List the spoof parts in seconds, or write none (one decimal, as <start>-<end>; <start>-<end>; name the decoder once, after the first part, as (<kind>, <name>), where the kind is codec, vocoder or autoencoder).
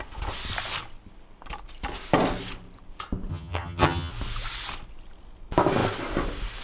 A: 3.3-4.1 (vocoder, HiFi-GAN)